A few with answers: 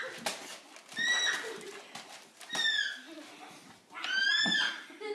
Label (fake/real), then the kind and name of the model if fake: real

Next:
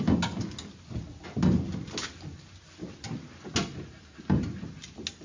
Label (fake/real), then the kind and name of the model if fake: real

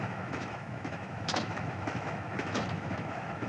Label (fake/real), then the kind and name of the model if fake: fake, autoencoder, DAC-VAE